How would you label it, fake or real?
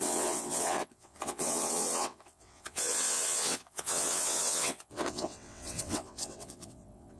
fake